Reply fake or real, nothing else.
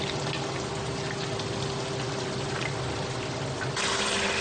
real